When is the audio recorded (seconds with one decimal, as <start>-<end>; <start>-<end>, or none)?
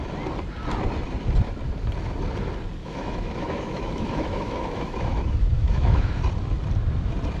0.0-2.8; 6.1-7.4